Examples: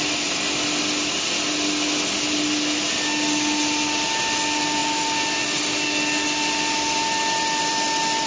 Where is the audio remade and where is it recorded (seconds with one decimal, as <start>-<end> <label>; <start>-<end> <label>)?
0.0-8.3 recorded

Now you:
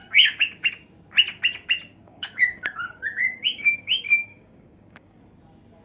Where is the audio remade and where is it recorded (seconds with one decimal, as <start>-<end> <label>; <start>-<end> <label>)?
0.0-0.7 remade; 0.7-1.9 recorded; 1.9-5.2 remade; 5.2-5.8 recorded

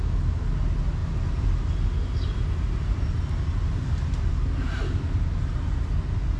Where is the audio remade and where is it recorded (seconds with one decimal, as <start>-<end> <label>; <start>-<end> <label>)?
0.0-6.4 recorded

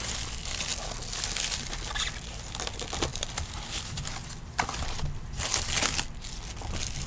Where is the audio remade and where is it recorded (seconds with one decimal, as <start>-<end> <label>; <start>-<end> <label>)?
0.0-7.1 recorded

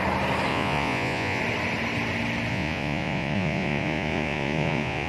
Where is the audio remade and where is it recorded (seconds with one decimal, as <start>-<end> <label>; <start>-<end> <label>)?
0.0-0.5 recorded; 0.5-1.4 remade; 1.4-2.5 recorded; 2.5-5.1 remade

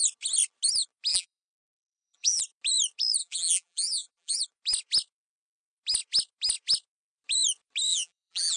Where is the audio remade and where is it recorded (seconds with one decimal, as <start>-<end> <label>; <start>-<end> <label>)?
0.0-1.1 recorded; 1.1-2.4 remade; 2.4-3.2 recorded; 3.2-4.4 remade; 4.4-7.9 recorded; 7.9-8.6 remade

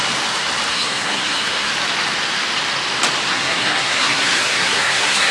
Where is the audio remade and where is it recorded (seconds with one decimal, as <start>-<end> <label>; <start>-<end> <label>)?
0.0-0.7 recorded; 0.7-1.7 remade; 1.7-3.3 recorded; 3.3-5.3 remade